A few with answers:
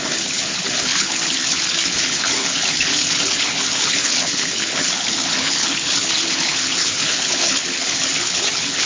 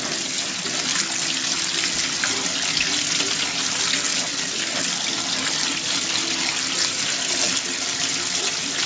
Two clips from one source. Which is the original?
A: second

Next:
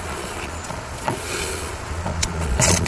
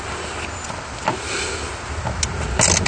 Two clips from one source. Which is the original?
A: second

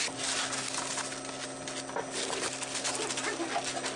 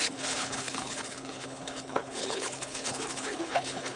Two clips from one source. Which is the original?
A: first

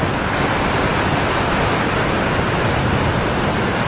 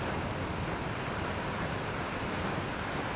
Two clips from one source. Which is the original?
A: first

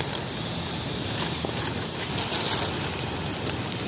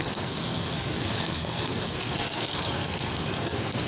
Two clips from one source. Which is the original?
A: first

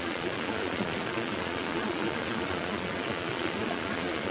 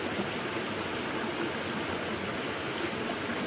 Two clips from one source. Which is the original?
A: second